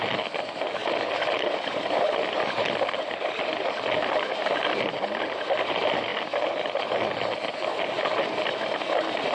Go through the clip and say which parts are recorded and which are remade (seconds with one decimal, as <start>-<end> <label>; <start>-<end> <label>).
0.0-9.3 recorded